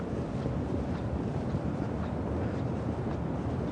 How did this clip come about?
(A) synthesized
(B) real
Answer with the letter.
A